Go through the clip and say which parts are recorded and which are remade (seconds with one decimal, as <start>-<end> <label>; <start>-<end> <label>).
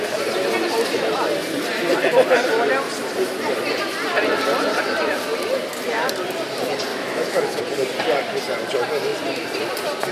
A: 0.0-6.9 recorded; 6.9-7.6 remade; 7.6-10.1 recorded